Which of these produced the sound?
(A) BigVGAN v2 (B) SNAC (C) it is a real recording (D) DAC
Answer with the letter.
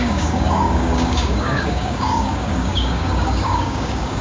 D